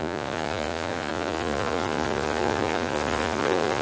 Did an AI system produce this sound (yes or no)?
yes